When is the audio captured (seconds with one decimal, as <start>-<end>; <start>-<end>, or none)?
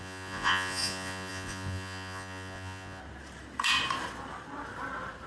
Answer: 3.0-5.3